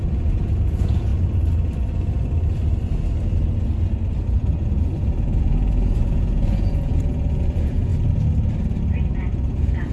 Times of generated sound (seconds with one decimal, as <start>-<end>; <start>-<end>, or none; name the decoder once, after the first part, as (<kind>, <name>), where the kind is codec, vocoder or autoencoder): 0.0-1.1 (vocoder, Vocos); 4.2-7.9; 9.1-9.9